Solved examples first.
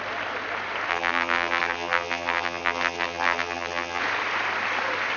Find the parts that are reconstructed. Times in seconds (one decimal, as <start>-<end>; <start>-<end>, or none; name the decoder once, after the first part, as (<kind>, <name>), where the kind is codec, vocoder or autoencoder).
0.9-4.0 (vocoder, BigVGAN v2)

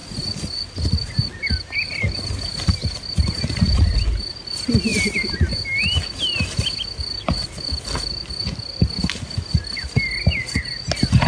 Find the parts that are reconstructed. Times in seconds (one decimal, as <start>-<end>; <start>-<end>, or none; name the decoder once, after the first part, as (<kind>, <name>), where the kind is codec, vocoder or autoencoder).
none

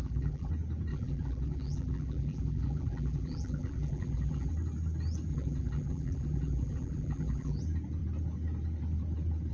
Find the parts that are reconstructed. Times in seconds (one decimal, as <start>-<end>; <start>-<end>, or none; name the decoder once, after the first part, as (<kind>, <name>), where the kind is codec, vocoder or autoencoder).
0.0-0.5 (vocoder, BigVGAN v2); 0.9-4.5; 5.3-7.6

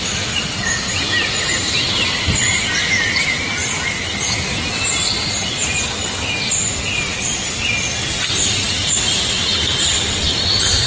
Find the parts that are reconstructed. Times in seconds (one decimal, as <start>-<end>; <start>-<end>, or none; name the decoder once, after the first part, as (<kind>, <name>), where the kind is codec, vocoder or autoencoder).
3.6-4.2 (vocoder, BigVGAN v2); 7.9-10.9